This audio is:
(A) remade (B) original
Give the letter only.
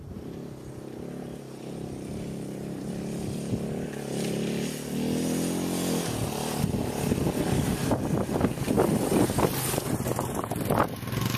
B